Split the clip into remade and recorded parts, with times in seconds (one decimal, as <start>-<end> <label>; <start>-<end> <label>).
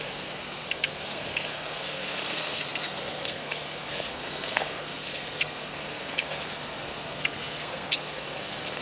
0.0-8.8 remade